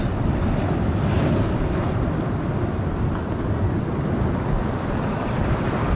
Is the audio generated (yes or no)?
no